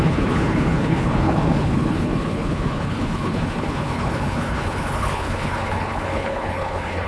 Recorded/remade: remade